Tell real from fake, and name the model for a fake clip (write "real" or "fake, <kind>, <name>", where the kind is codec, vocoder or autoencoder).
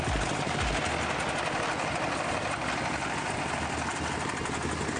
real